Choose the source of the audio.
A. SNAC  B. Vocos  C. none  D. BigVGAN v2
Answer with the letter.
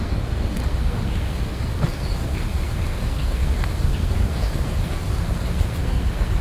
A